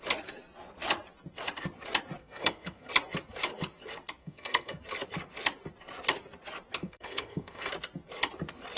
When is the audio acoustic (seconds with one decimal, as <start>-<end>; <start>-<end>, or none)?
0.0-2.2; 2.9-4.2; 4.8-6.8; 7.7-8.8